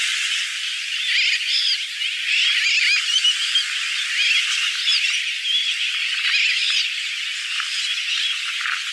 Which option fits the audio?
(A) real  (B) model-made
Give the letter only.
A